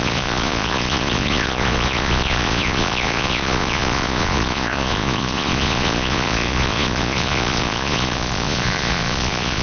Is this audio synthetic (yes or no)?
yes